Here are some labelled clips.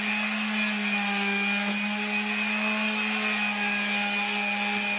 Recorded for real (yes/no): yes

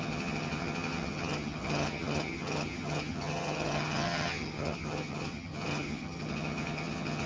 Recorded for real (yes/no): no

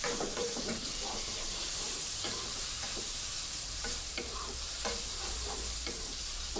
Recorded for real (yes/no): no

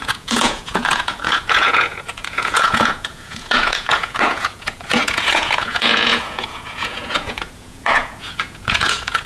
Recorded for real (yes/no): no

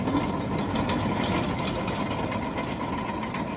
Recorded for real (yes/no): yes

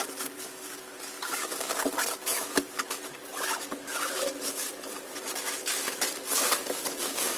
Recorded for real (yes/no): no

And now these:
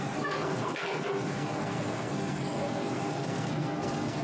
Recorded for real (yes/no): no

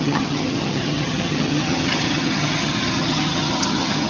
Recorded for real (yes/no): no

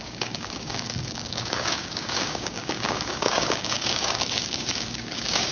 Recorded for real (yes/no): no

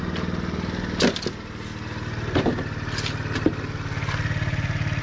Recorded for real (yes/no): yes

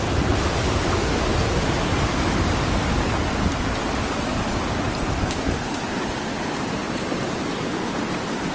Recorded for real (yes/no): yes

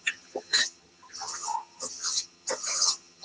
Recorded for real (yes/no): no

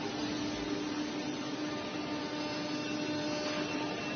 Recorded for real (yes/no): yes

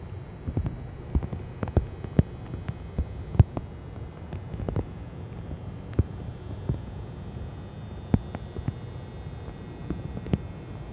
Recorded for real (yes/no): yes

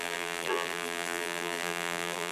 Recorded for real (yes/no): no